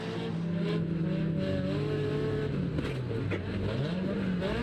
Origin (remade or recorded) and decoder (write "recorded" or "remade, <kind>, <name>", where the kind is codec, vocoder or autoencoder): recorded